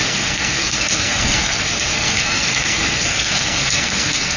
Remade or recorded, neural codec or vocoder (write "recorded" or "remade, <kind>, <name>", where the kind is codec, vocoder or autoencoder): remade, codec, SNAC